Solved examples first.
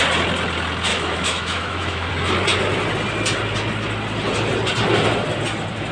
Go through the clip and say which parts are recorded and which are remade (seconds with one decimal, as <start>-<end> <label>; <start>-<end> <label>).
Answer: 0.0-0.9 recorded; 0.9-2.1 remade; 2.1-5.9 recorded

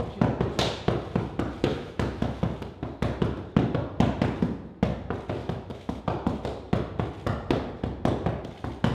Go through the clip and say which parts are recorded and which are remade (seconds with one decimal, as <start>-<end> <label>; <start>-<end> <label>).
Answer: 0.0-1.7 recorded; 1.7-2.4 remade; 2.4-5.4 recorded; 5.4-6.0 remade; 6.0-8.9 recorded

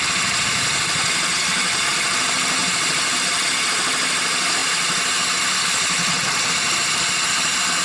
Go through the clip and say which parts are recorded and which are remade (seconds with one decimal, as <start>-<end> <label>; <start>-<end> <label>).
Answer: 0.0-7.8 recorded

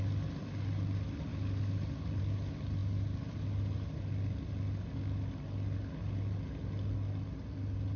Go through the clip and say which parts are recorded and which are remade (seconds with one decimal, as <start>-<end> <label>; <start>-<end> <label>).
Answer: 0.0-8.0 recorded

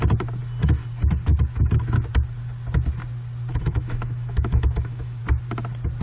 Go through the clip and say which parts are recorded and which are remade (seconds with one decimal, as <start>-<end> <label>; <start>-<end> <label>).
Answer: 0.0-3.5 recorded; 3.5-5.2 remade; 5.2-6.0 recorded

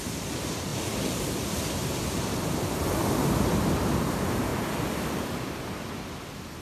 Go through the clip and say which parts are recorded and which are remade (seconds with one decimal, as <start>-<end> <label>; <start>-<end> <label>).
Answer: 0.0-6.6 recorded

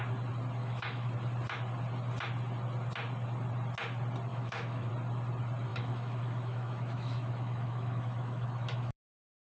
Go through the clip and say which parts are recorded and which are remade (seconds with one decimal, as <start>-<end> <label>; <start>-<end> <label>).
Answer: 0.0-0.6 recorded; 0.6-1.1 remade; 1.1-4.3 recorded; 4.3-4.9 remade; 4.9-5.7 recorded; 5.7-9.0 remade; 9.0-9.6 recorded

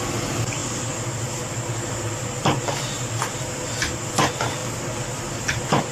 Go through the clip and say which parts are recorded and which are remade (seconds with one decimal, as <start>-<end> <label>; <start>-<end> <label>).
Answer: 0.0-5.9 recorded